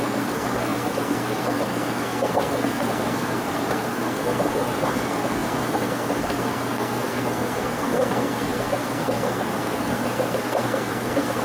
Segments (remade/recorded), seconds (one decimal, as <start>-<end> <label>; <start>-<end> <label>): 0.0-11.4 remade